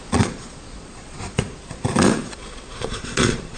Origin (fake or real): fake